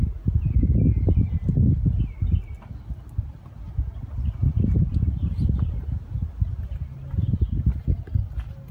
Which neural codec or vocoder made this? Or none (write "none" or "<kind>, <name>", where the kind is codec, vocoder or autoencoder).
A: none